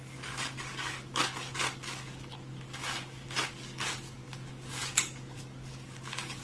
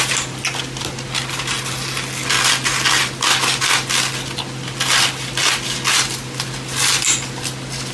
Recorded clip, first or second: second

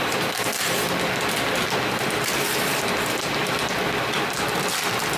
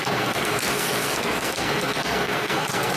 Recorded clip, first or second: first